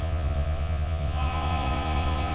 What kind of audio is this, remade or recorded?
remade